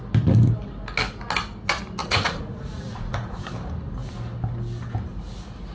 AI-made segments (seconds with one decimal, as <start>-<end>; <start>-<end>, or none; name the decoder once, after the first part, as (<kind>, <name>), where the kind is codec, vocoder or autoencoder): 2.0-3.5 (vocoder, Vocos)